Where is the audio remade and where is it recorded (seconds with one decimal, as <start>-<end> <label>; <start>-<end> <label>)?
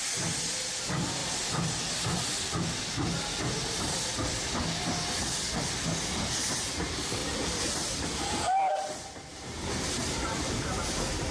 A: 0.0-7.2 recorded; 7.2-10.5 remade; 10.5-11.3 recorded